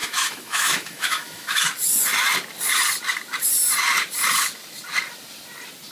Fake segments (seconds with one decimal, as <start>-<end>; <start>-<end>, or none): 0.0-1.6